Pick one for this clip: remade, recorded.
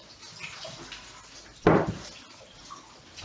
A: recorded